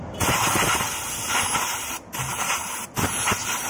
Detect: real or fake real